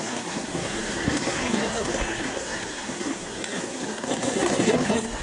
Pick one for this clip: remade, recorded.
remade